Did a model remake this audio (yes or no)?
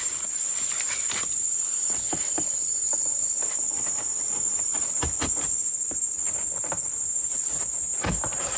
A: no